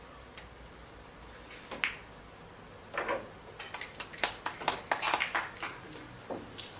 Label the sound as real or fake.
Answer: real